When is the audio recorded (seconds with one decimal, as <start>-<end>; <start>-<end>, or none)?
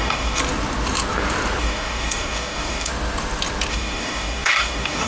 0.4-1.6; 2.9-3.7